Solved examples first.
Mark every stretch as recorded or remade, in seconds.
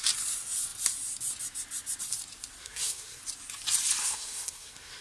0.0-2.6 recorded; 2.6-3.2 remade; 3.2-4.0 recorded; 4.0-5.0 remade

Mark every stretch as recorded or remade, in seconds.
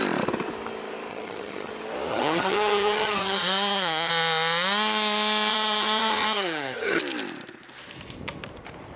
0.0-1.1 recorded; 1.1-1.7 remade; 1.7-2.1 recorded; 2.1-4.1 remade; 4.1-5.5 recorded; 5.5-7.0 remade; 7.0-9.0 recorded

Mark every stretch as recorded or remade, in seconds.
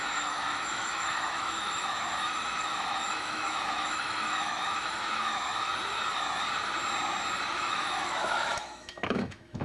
0.0-5.7 remade; 5.7-7.5 recorded; 7.5-9.6 remade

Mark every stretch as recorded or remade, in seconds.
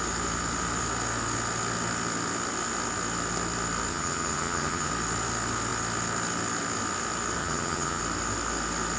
0.0-3.9 recorded; 3.9-4.9 remade; 4.9-7.4 recorded; 7.4-8.0 remade; 8.0-9.0 recorded